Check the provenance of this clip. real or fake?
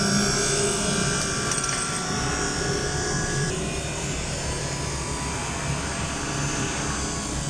real